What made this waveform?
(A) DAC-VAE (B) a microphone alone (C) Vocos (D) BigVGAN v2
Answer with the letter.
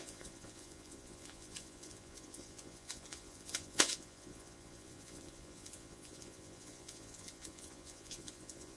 C